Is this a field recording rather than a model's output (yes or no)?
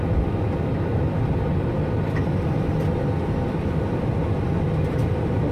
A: yes